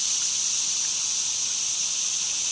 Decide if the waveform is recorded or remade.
recorded